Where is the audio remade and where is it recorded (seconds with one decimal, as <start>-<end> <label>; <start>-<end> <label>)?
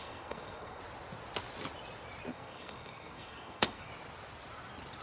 0.0-0.8 remade; 0.8-2.3 recorded; 2.3-3.9 remade; 3.9-5.0 recorded